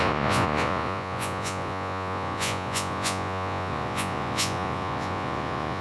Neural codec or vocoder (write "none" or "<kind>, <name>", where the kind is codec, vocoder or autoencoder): vocoder, Vocos